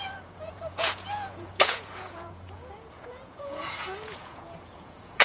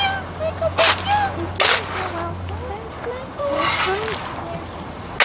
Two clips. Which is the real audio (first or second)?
second